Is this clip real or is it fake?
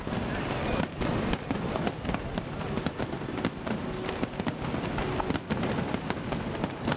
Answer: real